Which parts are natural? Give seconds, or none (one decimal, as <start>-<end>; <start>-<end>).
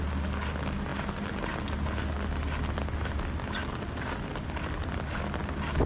0.0-5.9